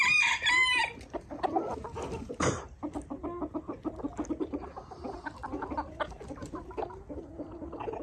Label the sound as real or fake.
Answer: real